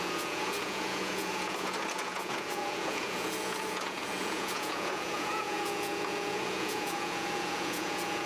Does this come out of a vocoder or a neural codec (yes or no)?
yes